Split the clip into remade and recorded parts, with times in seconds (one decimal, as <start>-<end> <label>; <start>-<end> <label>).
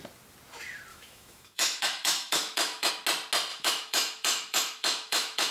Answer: 0.0-0.9 recorded; 0.9-2.9 remade; 2.9-3.5 recorded; 3.5-5.5 remade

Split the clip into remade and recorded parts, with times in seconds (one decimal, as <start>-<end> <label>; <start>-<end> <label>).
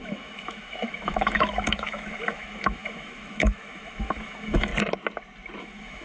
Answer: 0.0-4.7 remade; 4.7-5.6 recorded; 5.6-6.0 remade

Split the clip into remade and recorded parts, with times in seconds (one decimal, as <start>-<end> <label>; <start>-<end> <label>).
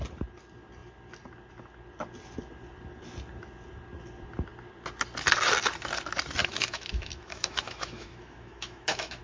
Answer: 0.0-6.4 recorded; 6.4-9.2 remade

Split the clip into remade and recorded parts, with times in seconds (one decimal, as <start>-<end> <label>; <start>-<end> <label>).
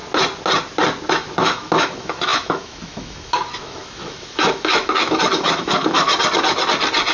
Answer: 0.0-1.1 recorded; 1.1-6.1 remade; 6.1-7.1 recorded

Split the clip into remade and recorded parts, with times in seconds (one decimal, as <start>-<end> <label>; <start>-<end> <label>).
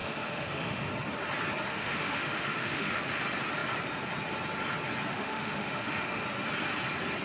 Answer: 0.0-0.9 remade; 0.9-1.7 recorded; 1.7-3.0 remade; 3.0-5.1 recorded; 5.1-6.2 remade; 6.2-7.2 recorded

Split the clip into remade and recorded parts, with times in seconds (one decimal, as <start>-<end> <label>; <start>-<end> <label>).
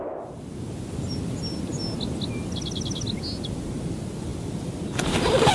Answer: 0.0-5.5 recorded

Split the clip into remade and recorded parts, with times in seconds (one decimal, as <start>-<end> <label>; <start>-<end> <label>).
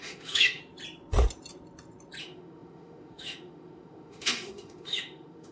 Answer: 0.0-0.6 remade; 0.6-2.2 recorded; 2.2-5.5 remade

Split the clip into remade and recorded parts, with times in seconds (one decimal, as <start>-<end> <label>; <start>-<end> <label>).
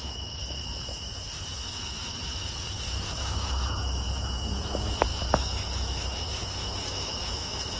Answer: 0.0-7.8 remade